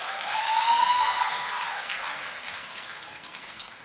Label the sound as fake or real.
fake